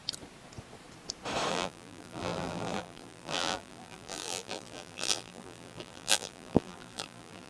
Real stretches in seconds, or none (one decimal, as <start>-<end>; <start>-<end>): 0.0-1.5